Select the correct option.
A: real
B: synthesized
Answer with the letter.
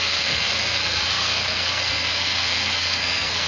B